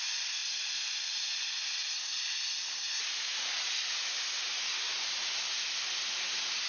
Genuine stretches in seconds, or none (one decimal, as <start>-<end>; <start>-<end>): 0.0-6.7